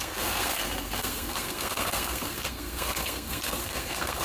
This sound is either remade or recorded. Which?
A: remade